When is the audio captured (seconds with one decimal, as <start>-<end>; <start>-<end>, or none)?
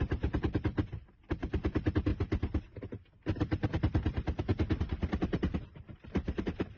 2.1-2.8; 4.5-5.0